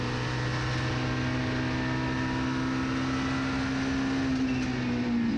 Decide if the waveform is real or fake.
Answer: real